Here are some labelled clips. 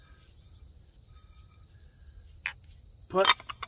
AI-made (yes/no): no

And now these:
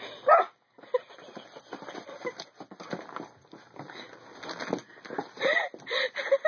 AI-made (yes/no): no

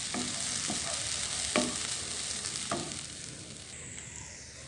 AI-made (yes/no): no